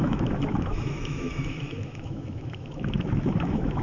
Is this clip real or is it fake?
fake